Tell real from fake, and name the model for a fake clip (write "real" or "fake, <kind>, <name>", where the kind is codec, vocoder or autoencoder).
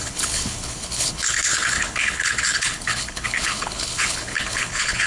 fake, codec, HILCodec